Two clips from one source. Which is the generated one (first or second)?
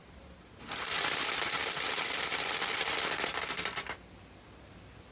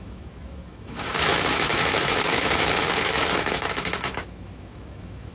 second